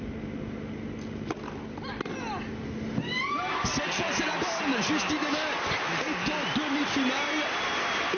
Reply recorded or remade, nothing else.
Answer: recorded